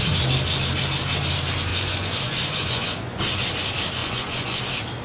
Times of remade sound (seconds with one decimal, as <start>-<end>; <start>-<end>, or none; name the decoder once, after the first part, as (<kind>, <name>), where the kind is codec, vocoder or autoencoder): 1.7-3.2 (vocoder, Vocos); 4.0-4.6